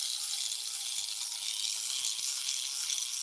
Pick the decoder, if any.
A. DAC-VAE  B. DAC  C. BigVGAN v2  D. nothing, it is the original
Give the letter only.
D